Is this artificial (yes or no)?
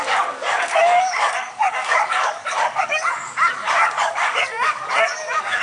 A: yes